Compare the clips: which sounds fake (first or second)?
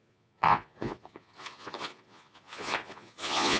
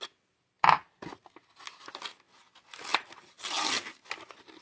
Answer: first